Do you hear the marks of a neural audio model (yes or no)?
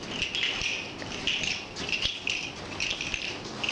no